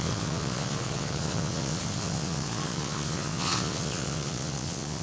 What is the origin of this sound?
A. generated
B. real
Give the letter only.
A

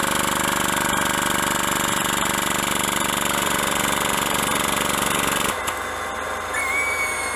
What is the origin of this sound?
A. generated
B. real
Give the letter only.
B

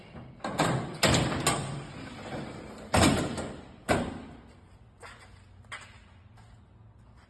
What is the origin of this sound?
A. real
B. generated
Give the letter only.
A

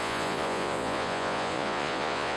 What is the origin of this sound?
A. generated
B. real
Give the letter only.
A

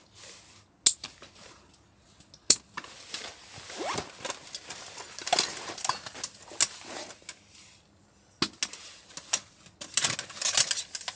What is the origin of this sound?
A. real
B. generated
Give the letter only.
A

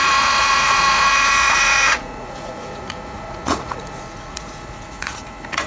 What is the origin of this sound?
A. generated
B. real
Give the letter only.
A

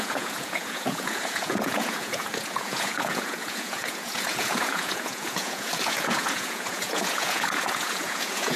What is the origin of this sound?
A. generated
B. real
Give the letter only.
A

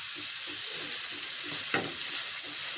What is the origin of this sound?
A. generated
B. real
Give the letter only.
B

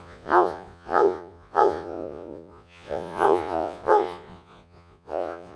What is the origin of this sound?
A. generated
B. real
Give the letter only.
A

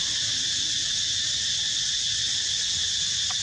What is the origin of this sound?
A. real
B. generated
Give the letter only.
A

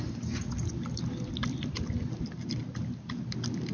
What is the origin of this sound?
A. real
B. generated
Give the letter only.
A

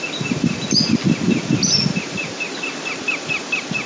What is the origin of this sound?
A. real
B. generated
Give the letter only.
A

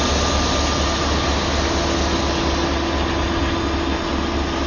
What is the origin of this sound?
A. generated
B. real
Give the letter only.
B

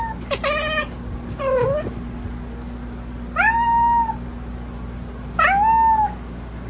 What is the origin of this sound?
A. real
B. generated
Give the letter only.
A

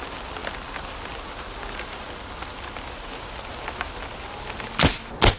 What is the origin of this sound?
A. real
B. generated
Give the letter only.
A